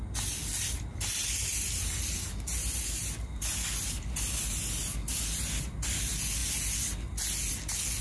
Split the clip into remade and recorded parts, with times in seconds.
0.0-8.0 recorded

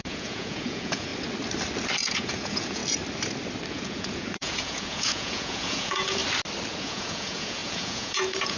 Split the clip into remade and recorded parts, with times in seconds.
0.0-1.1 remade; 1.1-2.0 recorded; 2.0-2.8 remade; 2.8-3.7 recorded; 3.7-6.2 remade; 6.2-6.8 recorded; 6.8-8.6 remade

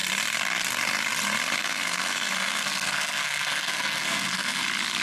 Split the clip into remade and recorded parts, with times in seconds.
0.0-1.6 recorded; 1.6-4.6 remade; 4.6-5.0 recorded